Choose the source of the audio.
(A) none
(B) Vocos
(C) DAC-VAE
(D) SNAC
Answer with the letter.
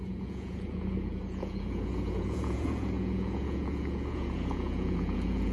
B